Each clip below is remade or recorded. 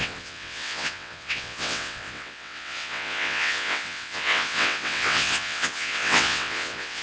remade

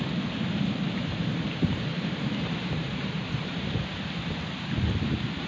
remade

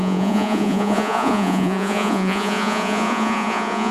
remade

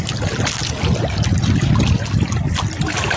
recorded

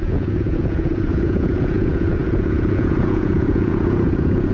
remade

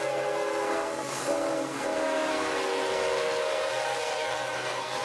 remade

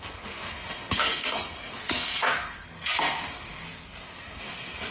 remade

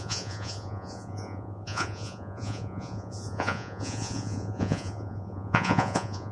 remade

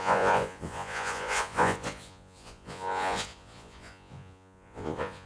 remade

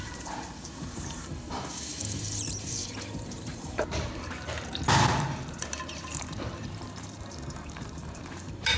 remade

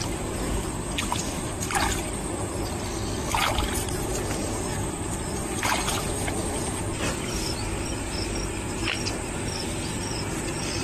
recorded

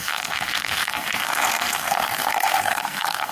remade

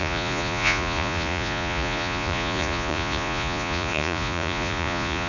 remade